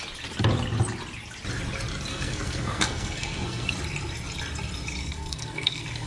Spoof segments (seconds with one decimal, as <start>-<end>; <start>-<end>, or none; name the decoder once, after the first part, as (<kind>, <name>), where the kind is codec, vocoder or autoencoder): 2.1-3.7 (codec, SNAC); 5.0-6.1